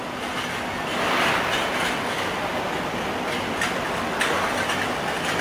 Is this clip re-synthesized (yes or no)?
no